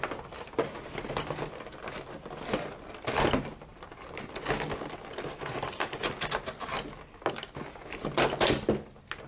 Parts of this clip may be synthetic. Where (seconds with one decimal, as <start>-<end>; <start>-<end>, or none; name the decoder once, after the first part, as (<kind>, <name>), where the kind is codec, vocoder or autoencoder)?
3.7-4.4 (vocoder, BigVGAN v2)